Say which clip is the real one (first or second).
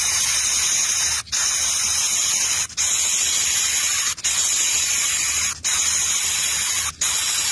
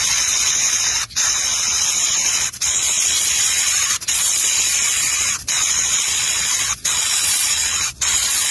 first